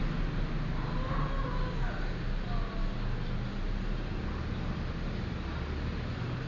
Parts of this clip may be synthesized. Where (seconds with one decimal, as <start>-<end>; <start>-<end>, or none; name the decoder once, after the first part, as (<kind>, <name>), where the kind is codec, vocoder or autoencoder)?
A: none